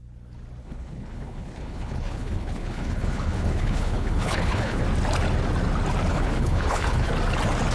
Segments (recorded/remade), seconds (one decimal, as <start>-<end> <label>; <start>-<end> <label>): 0.0-0.6 recorded; 0.6-4.8 remade; 4.8-6.1 recorded; 6.1-7.1 remade; 7.1-7.7 recorded